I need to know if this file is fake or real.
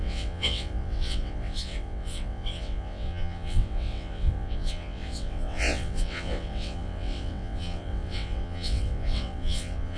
fake